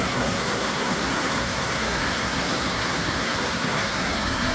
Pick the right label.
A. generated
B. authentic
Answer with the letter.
A